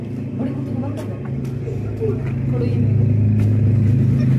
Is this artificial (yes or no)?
no